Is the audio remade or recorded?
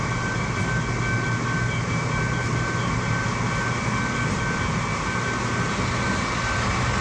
recorded